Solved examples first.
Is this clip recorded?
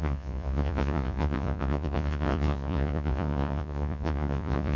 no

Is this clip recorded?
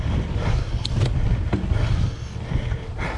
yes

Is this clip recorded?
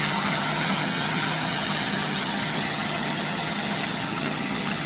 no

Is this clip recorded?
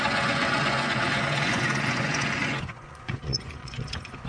no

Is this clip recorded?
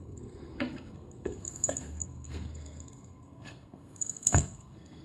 no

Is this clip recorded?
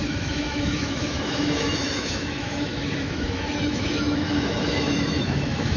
no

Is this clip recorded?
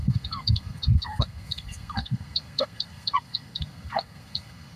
no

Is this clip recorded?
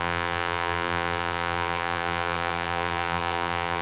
no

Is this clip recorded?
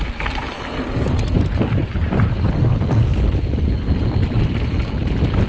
yes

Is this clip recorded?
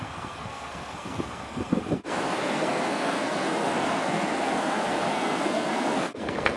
no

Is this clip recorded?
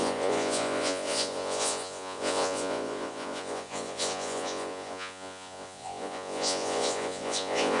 no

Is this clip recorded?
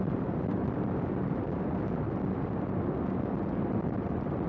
yes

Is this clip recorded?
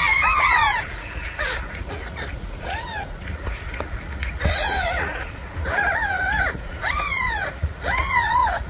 no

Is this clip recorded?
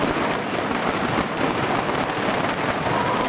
yes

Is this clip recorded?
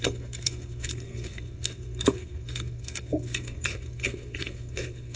no